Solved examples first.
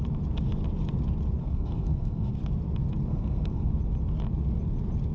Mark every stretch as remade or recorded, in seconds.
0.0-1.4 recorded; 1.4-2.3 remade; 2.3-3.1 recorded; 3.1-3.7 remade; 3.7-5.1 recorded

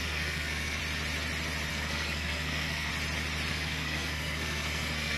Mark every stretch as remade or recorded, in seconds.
0.0-0.8 remade; 0.8-1.7 recorded; 1.7-2.9 remade; 2.9-3.5 recorded; 3.5-5.2 remade

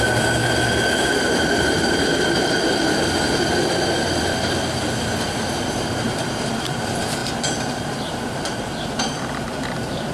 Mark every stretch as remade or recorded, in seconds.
0.0-0.4 remade; 0.4-1.1 recorded; 1.1-2.1 remade; 2.1-5.7 recorded; 5.7-10.1 remade

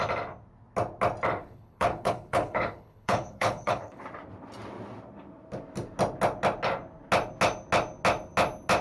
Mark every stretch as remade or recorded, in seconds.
0.0-1.4 recorded; 1.4-4.0 remade; 4.0-8.8 recorded

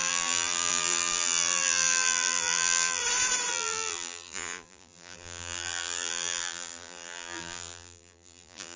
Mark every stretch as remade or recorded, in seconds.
0.0-3.0 remade; 3.0-3.5 recorded; 3.5-8.8 remade

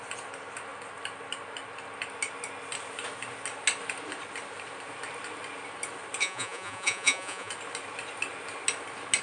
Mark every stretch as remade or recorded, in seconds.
0.0-6.2 recorded; 6.2-7.5 remade; 7.5-9.2 recorded

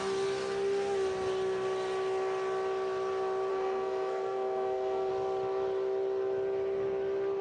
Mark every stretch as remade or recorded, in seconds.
0.0-3.5 recorded; 3.5-5.1 remade; 5.1-7.4 recorded

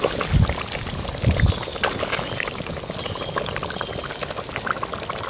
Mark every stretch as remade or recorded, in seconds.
0.0-5.3 recorded